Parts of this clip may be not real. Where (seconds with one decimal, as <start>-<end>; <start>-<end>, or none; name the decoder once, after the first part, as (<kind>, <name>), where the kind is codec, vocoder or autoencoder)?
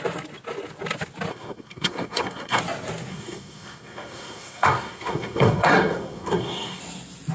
1.3-2.6 (codec, SNAC); 3.1-6.8